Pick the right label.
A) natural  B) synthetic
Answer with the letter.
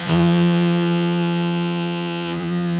B